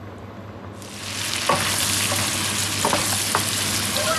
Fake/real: real